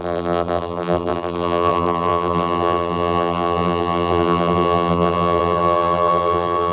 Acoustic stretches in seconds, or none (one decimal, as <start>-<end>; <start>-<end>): none